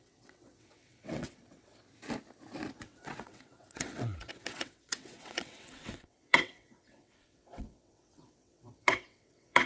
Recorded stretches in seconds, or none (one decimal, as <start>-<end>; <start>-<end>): 1.8-2.8